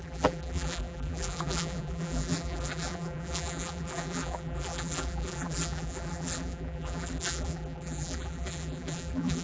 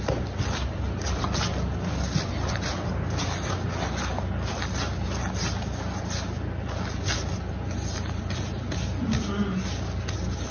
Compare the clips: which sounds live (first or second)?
second